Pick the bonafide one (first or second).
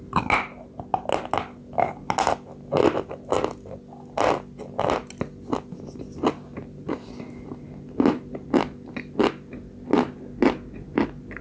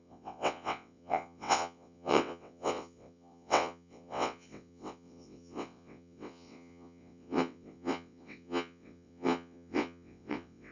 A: first